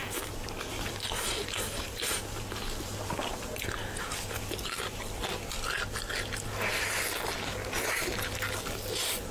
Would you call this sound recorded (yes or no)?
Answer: yes